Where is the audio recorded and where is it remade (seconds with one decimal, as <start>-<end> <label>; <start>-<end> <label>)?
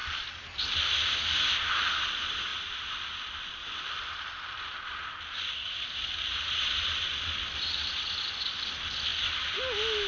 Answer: 0.0-10.1 recorded